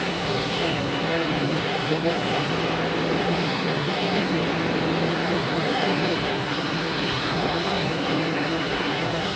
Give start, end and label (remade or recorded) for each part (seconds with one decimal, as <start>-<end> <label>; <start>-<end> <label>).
0.0-2.5 remade; 2.5-3.2 recorded; 3.2-4.4 remade; 4.4-5.1 recorded; 5.1-9.4 remade